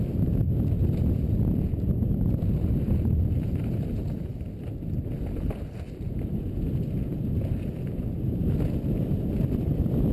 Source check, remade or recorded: recorded